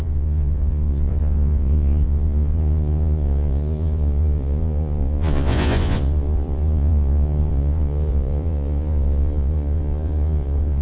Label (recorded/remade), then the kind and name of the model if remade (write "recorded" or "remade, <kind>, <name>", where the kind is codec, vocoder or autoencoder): remade, vocoder, Vocos